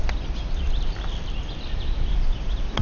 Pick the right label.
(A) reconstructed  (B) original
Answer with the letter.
B